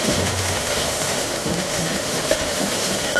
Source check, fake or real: fake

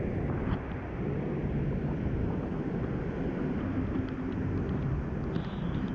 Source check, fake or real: real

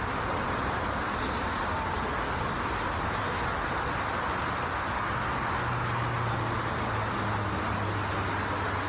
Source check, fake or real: real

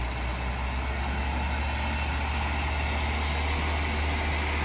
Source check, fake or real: real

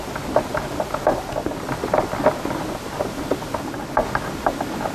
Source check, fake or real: real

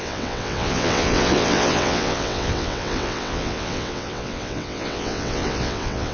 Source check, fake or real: fake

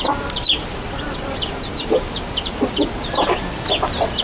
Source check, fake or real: real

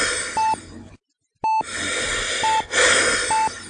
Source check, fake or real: real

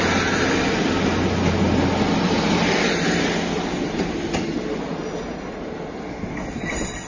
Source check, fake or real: real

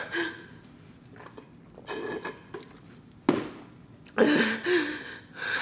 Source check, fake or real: real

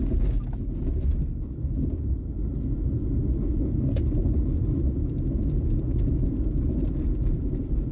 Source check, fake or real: real